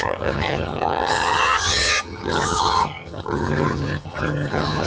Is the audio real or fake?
fake